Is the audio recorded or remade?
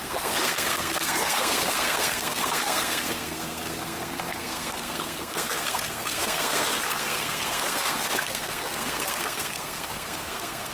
remade